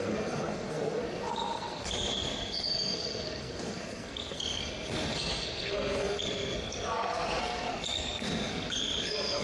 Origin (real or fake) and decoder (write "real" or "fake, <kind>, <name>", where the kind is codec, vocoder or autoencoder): fake, codec, SNAC